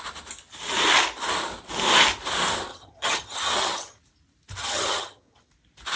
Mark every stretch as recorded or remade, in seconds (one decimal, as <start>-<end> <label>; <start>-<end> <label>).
0.0-2.7 recorded; 2.7-4.0 remade; 4.0-4.6 recorded; 4.6-5.5 remade; 5.5-6.0 recorded